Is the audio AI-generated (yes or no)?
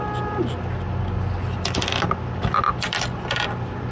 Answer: no